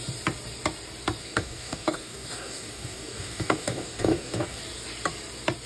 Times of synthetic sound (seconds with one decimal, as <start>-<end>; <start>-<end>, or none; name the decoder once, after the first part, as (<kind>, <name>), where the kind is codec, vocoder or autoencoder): 1.2-4.6 (codec, DAC)